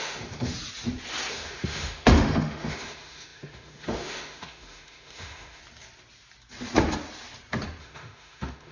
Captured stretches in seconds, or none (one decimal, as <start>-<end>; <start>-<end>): 0.5-1.3; 5.6-7.8